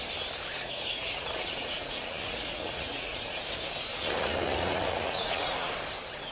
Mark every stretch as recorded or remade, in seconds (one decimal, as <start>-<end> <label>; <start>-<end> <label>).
0.0-0.5 recorded; 0.5-3.4 remade; 3.4-3.9 recorded; 3.9-5.7 remade; 5.7-6.3 recorded